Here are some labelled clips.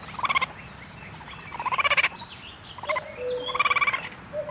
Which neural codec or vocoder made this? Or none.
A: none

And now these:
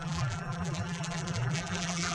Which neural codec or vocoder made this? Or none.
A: vocoder, BigVGAN v2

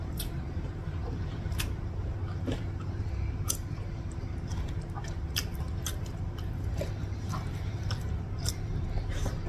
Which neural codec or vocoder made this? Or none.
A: vocoder, BigVGAN v2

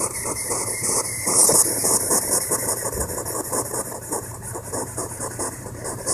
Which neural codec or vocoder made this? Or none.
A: vocoder, BigVGAN v2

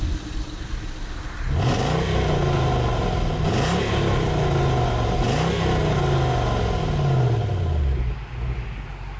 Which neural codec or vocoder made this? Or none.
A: none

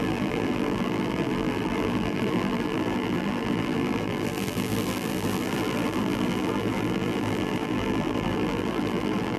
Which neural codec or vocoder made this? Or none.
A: vocoder, BigVGAN v2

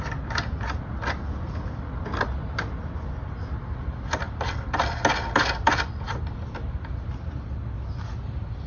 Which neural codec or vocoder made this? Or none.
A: none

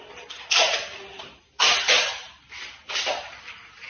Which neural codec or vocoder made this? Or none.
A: none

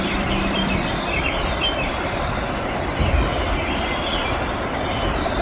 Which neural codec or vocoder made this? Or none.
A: vocoder, BigVGAN v2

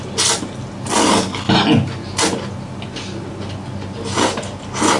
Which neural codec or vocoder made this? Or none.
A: none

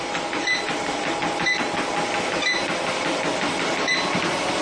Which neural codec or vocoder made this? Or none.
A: none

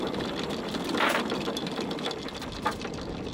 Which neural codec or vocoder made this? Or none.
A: none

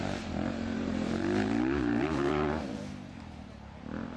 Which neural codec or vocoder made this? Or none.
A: vocoder, BigVGAN v2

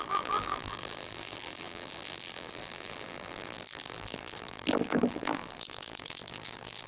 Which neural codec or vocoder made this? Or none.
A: vocoder, BigVGAN v2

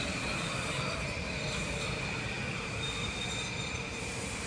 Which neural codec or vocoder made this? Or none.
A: none